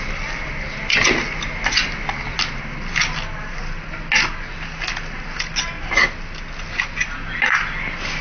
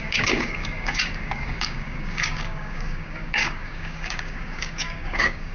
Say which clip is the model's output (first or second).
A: second